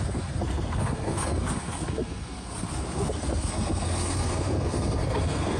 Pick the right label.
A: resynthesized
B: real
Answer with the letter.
A